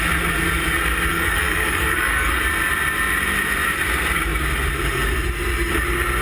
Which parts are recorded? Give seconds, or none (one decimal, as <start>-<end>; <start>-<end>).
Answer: 0.0-1.1; 2.4-6.2